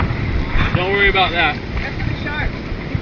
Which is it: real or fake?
real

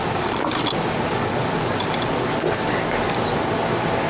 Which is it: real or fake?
real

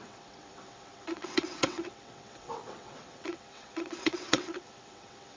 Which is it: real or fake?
fake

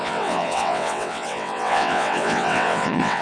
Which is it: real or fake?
fake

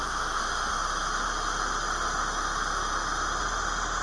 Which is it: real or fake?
real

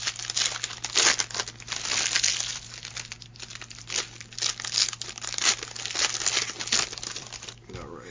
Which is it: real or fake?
real